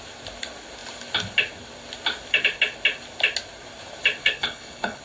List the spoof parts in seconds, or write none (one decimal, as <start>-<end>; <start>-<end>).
4.2-5.0